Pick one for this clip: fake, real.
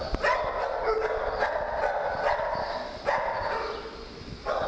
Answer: real